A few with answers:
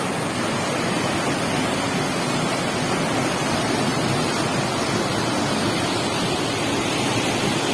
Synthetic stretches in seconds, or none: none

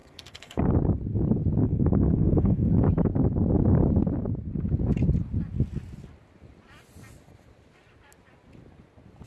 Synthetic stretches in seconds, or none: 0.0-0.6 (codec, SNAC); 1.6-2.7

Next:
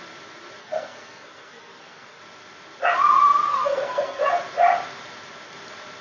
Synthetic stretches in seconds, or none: 0.6-2.2 (codec, SNAC); 3.5-4.2

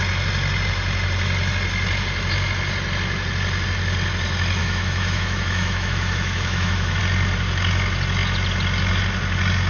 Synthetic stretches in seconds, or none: 4.6-7.0 (autoencoder, DAC-VAE)